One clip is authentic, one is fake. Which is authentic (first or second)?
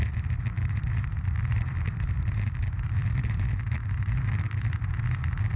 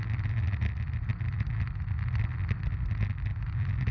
second